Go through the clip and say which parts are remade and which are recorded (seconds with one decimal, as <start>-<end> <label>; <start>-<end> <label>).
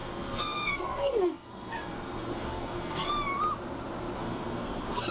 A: 0.0-3.1 remade; 3.1-4.2 recorded; 4.2-5.1 remade